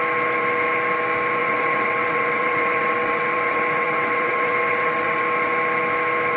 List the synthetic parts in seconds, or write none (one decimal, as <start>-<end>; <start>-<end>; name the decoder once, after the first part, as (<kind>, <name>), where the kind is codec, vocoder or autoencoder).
1.4-5.2 (vocoder, WaveNeXt)